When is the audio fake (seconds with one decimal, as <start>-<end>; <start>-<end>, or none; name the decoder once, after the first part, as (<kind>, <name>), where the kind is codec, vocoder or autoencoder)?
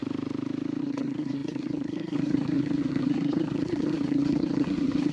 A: 0.8-5.1 (codec, SNAC)